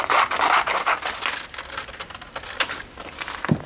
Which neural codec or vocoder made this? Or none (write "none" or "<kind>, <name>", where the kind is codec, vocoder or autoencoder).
none